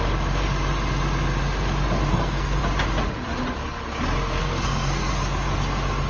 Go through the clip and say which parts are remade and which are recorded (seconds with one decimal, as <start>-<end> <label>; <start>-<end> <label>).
0.0-2.1 recorded; 2.1-2.6 remade; 2.6-4.4 recorded; 4.4-5.1 remade; 5.1-6.1 recorded